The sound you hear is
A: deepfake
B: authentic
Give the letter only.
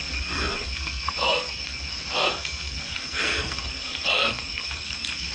A